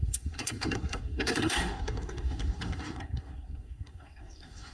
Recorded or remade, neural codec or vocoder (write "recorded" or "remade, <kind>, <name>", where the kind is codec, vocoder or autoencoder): remade, codec, SNAC